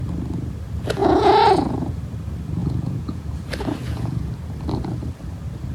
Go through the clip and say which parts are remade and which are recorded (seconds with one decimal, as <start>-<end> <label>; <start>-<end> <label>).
0.0-1.0 recorded; 1.0-2.0 remade; 2.0-2.6 recorded; 2.6-3.3 remade; 3.3-3.8 recorded; 3.8-4.3 remade; 4.3-5.7 recorded